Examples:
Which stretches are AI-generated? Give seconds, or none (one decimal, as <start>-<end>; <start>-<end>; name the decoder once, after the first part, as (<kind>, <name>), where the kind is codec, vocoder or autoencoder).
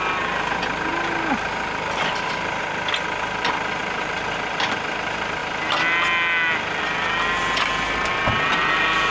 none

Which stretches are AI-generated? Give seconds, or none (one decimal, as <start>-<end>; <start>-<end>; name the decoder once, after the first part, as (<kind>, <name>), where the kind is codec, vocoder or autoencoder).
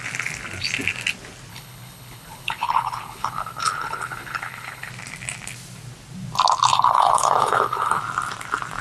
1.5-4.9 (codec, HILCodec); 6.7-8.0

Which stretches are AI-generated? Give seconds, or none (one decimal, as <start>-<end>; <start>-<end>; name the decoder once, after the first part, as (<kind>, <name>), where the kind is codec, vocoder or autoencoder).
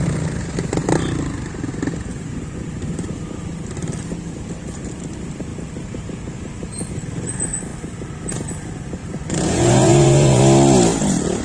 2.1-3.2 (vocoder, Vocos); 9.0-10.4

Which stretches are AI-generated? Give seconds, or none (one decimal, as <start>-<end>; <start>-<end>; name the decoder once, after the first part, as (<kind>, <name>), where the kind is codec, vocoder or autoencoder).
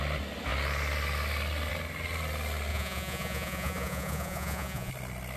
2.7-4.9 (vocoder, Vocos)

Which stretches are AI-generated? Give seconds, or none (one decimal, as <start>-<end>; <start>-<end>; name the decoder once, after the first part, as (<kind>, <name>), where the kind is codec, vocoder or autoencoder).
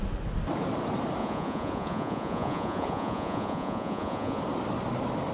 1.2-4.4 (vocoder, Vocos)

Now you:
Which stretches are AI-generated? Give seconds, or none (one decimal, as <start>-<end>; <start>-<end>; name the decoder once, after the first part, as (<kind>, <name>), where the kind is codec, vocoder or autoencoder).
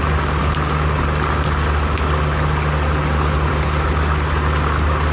none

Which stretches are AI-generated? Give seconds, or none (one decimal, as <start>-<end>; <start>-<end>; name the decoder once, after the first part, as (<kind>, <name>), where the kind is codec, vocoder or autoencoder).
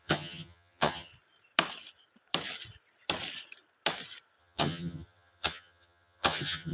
0.0-1.1 (vocoder, HiFi-GAN); 4.4-6.7